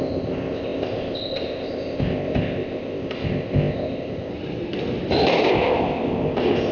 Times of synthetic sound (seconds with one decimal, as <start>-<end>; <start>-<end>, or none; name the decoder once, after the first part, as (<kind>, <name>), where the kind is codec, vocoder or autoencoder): 0.0-4.3 (codec, ZipCodec); 5.5-6.7